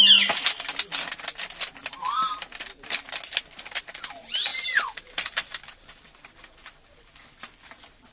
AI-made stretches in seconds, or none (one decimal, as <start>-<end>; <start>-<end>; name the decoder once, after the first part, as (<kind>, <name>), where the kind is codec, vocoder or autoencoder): 1.8-2.4 (vocoder, BigVGAN v2); 4.5-5.6